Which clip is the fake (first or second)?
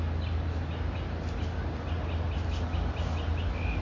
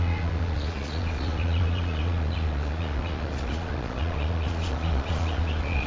second